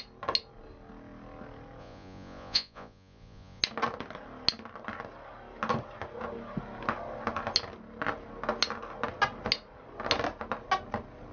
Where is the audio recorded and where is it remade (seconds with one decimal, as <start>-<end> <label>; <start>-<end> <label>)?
0.0-1.8 recorded; 1.8-3.6 remade; 3.6-11.3 recorded